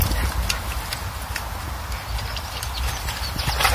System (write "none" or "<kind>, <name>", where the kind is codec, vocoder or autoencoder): none